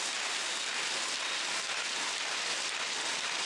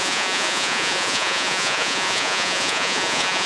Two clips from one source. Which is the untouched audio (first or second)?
first